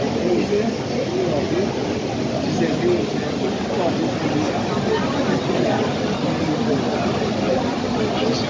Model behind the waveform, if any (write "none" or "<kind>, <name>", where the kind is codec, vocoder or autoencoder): none